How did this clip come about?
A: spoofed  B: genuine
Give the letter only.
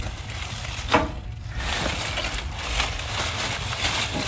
B